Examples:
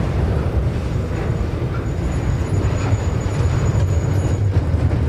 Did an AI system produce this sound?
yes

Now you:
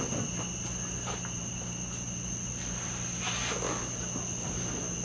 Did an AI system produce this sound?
no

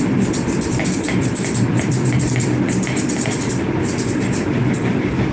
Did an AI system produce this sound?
yes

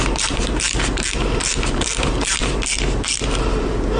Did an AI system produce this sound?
yes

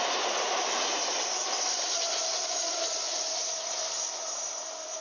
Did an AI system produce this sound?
yes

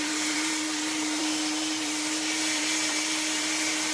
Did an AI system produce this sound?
yes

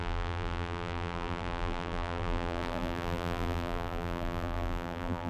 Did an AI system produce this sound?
yes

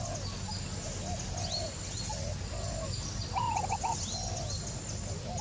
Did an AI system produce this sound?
no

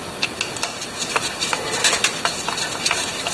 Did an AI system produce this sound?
no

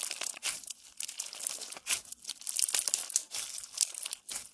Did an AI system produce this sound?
no